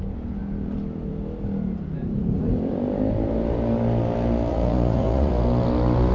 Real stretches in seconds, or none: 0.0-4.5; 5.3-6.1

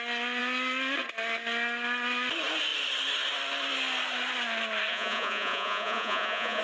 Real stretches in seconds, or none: 0.0-4.9

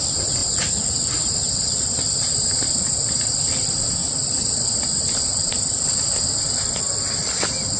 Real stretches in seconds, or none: 0.0-0.4; 1.3-7.8

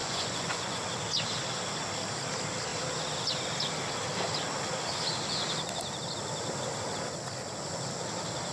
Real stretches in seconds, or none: 0.8-8.5